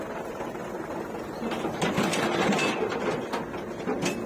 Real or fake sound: real